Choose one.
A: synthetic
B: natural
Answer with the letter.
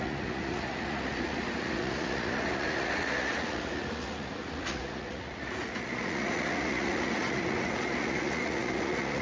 A